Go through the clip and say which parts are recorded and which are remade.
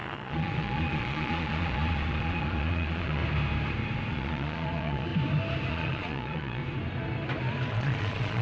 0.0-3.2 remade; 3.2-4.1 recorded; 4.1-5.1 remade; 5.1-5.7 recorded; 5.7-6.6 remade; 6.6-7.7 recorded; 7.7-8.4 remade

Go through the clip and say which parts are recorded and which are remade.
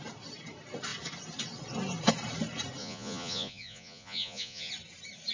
0.0-2.8 recorded; 2.8-4.7 remade; 4.7-5.3 recorded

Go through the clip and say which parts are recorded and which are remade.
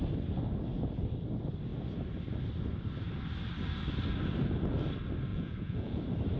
0.0-5.3 recorded; 5.3-6.0 remade; 6.0-6.4 recorded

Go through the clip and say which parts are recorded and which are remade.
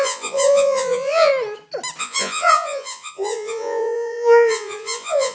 0.0-1.3 remade; 1.3-2.0 recorded; 2.0-5.3 remade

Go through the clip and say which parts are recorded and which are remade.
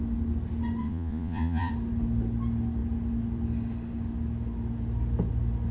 0.0-0.8 recorded; 0.8-1.7 remade; 1.7-5.7 recorded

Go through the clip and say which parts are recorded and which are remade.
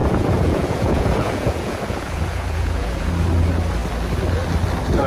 0.0-3.1 remade; 3.1-5.1 recorded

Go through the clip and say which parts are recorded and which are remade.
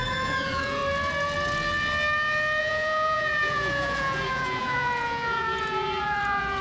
0.0-0.8 remade; 0.8-2.6 recorded; 2.6-6.6 remade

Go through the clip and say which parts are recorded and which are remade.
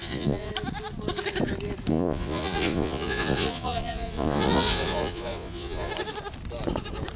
0.0-0.5 remade; 0.5-1.9 recorded; 1.9-5.9 remade; 5.9-7.2 recorded